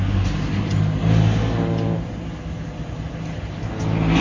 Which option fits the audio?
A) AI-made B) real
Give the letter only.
B